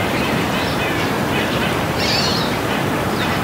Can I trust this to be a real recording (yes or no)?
no